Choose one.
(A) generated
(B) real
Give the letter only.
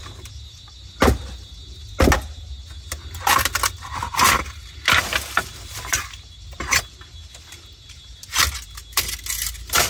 B